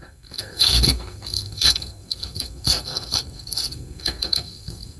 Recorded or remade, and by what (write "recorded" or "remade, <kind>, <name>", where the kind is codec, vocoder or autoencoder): remade, codec, SNAC